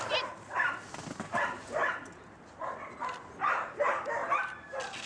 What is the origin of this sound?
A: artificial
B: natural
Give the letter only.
B